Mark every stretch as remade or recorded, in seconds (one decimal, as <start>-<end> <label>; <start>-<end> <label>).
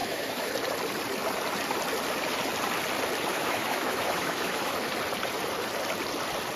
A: 0.0-0.5 remade; 0.5-3.3 recorded; 3.3-4.9 remade; 4.9-6.6 recorded